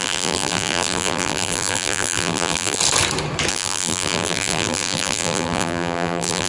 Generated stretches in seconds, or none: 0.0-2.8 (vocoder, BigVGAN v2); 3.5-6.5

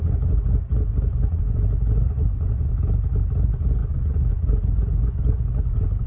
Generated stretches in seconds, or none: 0.0-2.7 (vocoder, Vocos); 3.4-6.1

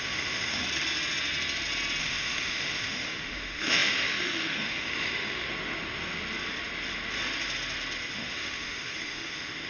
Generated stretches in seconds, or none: 0.0-0.6 (autoencoder, DAC-VAE); 2.0-5.5; 8.1-9.7

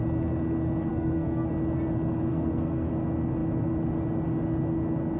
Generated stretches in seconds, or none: 0.9-1.5 (codec, SNAC); 2.3-2.9

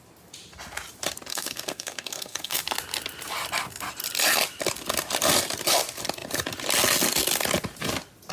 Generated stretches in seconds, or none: 1.3-2.6 (codec, SNAC)

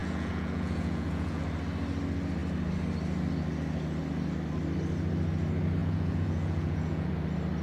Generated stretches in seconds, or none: 0.0-1.4 (vocoder, Vocos); 5.8-7.1